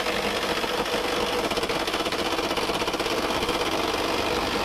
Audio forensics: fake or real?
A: real